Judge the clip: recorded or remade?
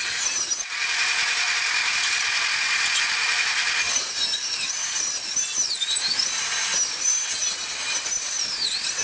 recorded